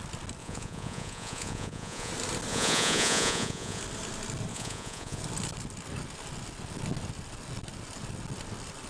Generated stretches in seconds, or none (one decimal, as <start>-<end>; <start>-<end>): 0.4-2.1; 2.5-3.8; 4.5-5.2